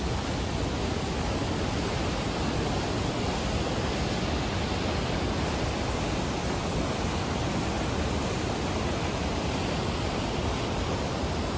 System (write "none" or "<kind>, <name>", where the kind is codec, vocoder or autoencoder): none